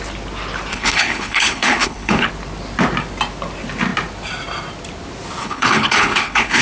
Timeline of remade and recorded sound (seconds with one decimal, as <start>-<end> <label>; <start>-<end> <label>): 0.0-0.7 recorded; 0.7-2.3 remade; 2.3-5.4 recorded; 5.4-6.6 remade